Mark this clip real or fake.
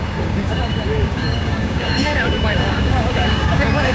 fake